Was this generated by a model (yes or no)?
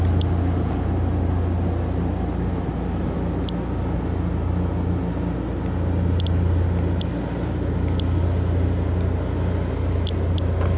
no